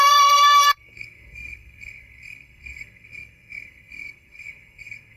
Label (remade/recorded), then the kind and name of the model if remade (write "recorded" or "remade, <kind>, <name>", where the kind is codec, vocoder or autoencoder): remade, codec, SNAC